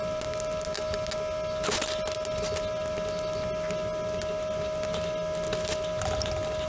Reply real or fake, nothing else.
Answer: real